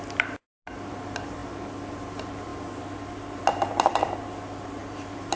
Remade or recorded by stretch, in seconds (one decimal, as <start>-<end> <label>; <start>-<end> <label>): 0.0-4.8 recorded; 4.8-5.4 remade